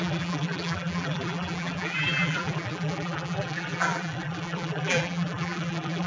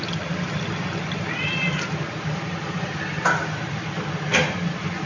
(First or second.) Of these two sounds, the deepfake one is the first